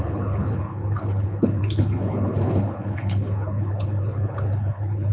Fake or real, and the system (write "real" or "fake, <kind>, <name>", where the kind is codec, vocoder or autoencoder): fake, codec, HILCodec